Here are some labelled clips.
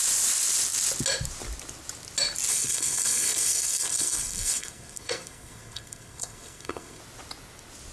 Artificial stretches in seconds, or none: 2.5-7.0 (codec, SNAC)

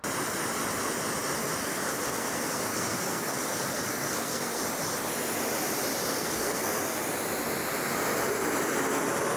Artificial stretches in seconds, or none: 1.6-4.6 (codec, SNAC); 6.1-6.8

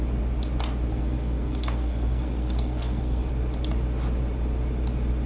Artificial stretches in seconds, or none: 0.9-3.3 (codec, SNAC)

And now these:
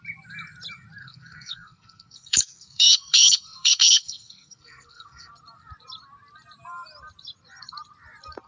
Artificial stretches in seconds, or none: 1.0-5.3 (codec, SNAC)

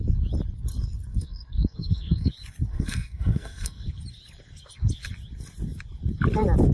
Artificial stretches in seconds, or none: 1.1-2.3 (codec, SNAC); 2.7-3.9

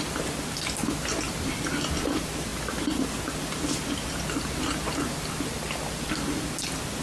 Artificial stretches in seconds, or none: none